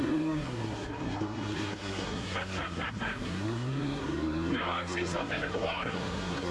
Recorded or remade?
remade